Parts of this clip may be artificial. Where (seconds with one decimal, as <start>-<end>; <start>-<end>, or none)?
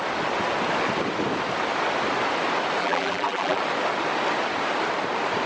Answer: 2.8-3.6